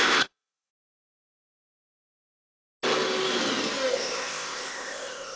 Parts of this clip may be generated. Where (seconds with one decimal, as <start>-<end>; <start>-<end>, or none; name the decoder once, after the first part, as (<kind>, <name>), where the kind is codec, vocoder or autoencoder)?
0.0-0.7 (codec, ZipCodec); 3.9-5.4